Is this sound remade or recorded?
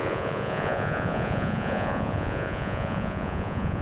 remade